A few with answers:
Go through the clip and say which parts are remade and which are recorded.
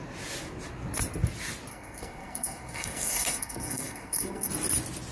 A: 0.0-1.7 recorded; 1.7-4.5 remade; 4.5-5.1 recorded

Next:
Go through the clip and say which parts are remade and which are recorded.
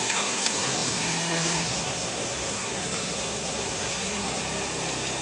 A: 0.0-4.4 remade; 4.4-5.2 recorded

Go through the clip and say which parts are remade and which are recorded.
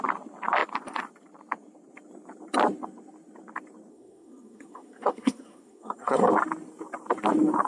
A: 0.0-3.9 recorded; 3.9-6.3 remade; 6.3-7.7 recorded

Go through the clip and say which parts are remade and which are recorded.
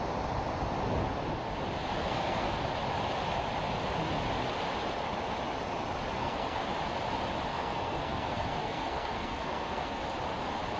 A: 0.0-2.0 recorded; 2.0-2.6 remade; 2.6-6.2 recorded; 6.2-6.7 remade; 6.7-7.5 recorded; 7.5-10.0 remade; 10.0-10.8 recorded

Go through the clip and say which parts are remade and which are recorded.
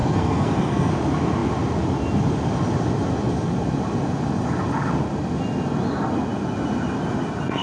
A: 0.0-0.9 remade; 0.9-7.6 recorded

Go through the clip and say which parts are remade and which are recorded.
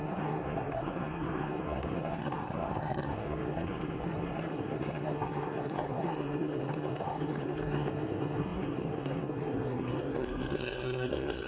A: 0.0-11.5 remade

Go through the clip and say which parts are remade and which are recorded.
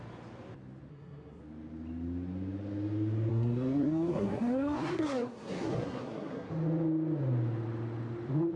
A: 0.0-0.9 recorded; 0.9-1.4 remade; 1.4-3.3 recorded; 3.3-6.5 remade; 6.5-8.6 recorded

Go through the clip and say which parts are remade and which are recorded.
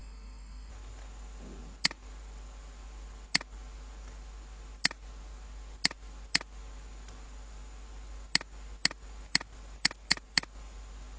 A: 0.0-0.7 remade; 0.7-11.2 recorded